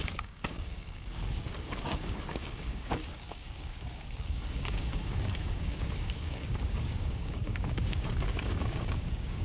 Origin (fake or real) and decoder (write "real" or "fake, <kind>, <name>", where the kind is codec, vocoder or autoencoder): fake, codec, DAC